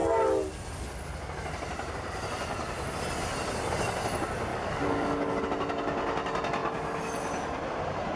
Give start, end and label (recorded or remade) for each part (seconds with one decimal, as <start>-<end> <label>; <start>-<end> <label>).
0.0-4.5 recorded; 4.5-5.4 remade; 5.4-8.2 recorded